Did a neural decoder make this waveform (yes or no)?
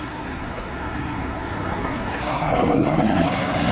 yes